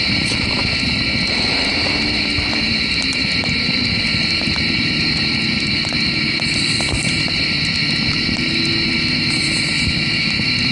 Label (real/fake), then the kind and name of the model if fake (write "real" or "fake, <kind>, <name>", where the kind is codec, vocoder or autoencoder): fake, vocoder, BigVGAN v2